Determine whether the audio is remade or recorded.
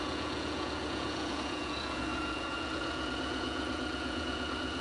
remade